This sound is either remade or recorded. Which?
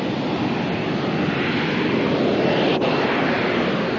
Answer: recorded